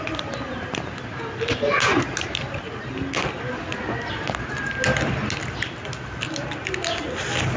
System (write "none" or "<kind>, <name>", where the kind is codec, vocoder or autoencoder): none